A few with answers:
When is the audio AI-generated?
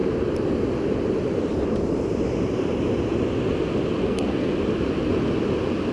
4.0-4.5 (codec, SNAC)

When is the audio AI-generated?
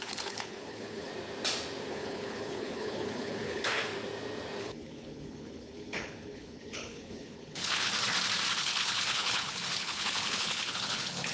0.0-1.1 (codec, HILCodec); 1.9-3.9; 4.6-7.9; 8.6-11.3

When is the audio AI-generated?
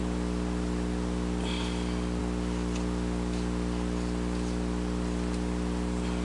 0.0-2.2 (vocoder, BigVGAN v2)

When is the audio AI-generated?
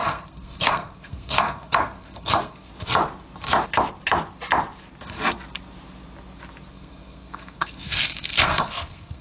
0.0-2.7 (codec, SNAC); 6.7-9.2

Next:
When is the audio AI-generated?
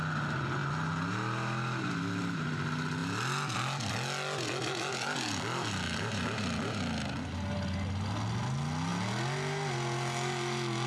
none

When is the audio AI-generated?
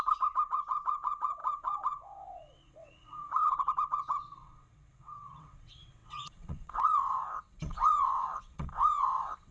0.0-9.5 (vocoder, WaveNeXt)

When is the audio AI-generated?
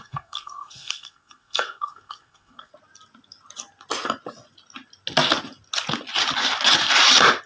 0.0-2.7 (codec, SNAC)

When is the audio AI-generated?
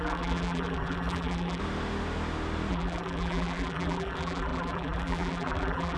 0.0-1.6 (vocoder, BigVGAN v2); 2.7-6.0